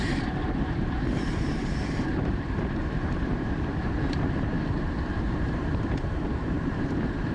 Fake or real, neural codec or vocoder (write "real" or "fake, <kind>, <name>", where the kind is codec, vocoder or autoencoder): fake, vocoder, BigVGAN v2